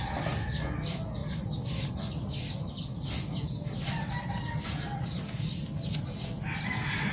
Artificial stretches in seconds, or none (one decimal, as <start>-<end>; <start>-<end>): 1.2-1.9